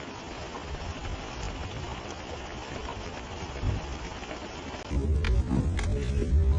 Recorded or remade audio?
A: recorded